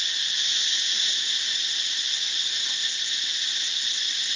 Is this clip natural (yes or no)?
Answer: yes